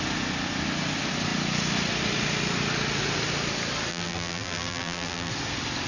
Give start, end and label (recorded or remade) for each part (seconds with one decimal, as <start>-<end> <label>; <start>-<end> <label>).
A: 0.0-3.9 recorded; 3.9-5.3 remade; 5.3-5.9 recorded